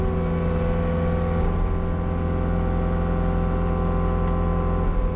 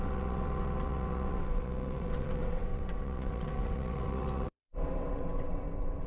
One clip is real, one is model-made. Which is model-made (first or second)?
second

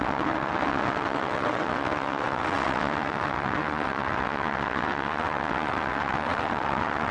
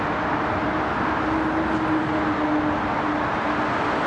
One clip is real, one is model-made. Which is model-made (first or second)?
first